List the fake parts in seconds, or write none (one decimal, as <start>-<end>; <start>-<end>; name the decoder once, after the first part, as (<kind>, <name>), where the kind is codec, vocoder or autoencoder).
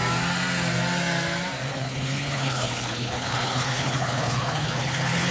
1.7-5.3 (codec, HILCodec)